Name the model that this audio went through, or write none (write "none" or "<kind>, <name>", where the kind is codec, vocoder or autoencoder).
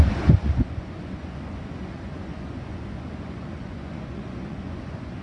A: vocoder, Vocos